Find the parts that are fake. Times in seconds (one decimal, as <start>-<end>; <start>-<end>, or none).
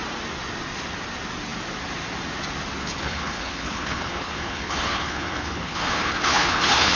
2.8-7.0